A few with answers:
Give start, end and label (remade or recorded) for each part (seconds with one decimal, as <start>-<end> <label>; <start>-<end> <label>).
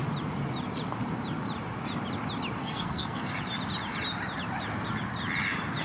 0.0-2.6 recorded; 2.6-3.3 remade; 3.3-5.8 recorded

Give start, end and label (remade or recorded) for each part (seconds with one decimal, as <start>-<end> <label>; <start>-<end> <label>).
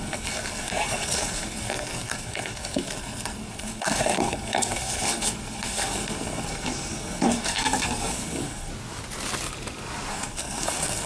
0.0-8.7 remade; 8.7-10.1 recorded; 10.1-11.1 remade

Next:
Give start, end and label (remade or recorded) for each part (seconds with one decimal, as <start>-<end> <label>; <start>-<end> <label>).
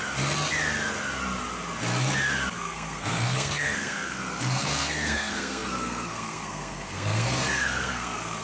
0.0-2.5 recorded; 2.5-8.4 remade